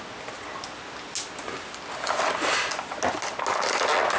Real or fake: real